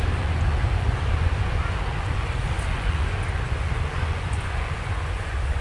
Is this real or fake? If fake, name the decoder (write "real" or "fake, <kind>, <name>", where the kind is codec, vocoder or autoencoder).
fake, vocoder, Vocos